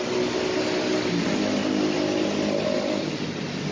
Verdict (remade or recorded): recorded